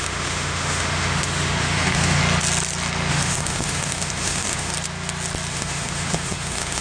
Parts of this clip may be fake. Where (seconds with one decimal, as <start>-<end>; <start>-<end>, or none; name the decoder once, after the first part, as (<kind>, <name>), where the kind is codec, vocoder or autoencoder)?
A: 0.0-2.2 (autoencoder, DAC-VAE); 3.1-4.7; 5.5-6.8